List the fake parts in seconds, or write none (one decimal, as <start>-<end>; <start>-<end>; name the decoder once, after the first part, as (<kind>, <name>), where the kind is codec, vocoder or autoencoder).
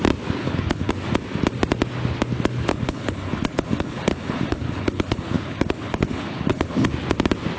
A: 0.4-0.9 (codec, HILCodec); 2.7-6.9